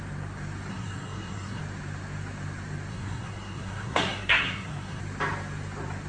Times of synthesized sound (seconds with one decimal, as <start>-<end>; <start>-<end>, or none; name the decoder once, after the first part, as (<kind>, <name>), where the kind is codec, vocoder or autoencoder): 0.7-1.6 (codec, SNAC); 2.9-5.0